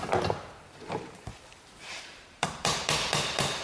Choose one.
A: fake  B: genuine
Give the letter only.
A